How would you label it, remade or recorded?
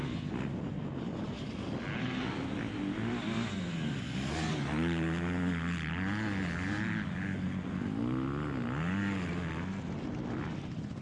recorded